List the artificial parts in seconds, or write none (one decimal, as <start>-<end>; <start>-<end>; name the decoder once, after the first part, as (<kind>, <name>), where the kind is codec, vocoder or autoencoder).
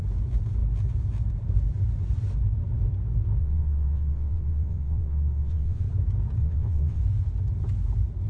3.4-5.8 (vocoder, WaveNeXt); 6.4-7.0